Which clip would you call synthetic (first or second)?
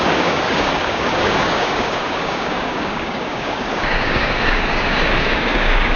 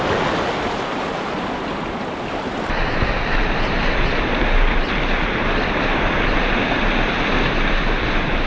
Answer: first